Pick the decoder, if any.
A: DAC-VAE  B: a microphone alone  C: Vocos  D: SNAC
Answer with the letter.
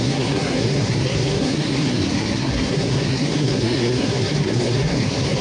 D